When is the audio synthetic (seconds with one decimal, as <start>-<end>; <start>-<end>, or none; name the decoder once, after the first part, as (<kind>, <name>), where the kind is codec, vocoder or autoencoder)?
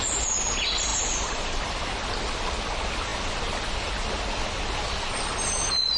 0.9-1.8 (vocoder, BigVGAN v2)